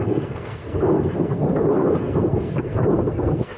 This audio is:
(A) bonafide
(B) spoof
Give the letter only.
B